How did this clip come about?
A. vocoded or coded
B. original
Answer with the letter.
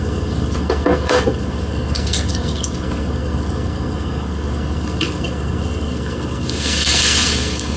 A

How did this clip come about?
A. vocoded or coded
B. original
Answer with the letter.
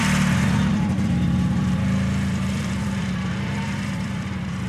A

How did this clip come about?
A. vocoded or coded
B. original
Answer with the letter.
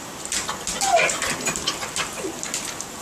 B